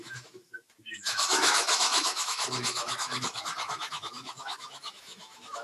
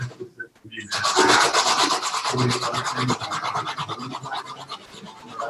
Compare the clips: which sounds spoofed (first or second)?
first